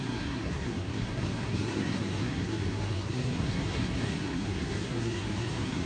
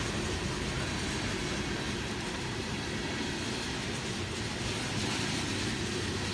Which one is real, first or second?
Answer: second